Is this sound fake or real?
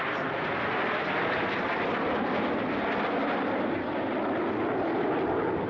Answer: real